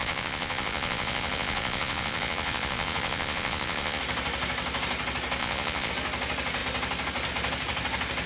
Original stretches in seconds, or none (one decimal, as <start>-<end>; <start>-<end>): 4.0-5.4; 5.9-8.3